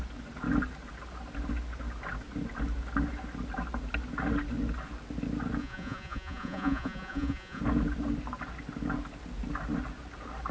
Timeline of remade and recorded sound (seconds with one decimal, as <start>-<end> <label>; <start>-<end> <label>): 0.0-5.6 recorded; 5.6-7.6 remade; 7.6-10.5 recorded